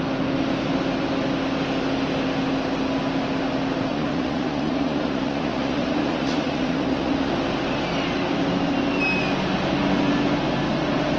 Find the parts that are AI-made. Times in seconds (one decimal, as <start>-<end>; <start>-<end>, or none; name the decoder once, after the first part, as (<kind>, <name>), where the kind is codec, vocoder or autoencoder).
3.9-7.3 (vocoder, Vocos)